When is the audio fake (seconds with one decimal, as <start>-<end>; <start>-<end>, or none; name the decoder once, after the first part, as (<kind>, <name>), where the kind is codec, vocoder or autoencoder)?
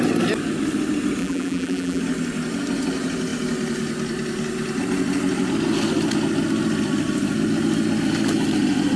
1.2-2.0 (vocoder, BigVGAN v2)